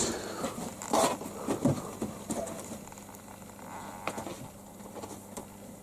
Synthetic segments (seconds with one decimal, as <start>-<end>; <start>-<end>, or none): none